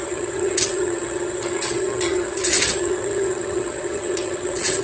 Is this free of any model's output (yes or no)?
no